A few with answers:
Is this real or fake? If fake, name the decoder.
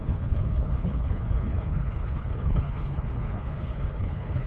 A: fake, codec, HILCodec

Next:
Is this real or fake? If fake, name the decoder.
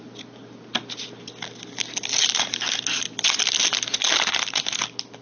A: real